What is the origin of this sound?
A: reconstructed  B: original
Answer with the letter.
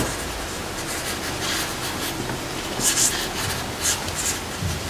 B